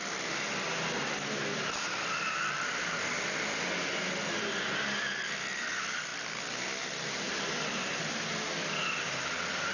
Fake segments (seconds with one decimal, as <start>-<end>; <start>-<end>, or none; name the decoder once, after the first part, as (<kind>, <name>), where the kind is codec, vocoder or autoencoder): none